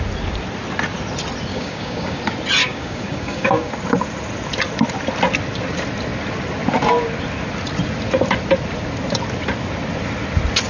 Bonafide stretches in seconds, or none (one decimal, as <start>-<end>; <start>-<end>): 0.0-1.5; 2.2-2.6; 3.7-10.7